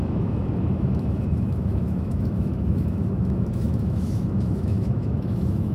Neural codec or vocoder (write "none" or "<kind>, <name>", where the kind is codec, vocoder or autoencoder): autoencoder, DAC-VAE